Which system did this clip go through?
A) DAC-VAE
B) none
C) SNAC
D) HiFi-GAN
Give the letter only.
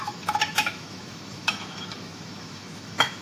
A